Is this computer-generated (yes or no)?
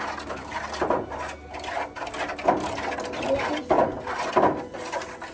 no